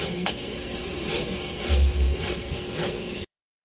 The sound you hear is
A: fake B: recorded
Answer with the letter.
A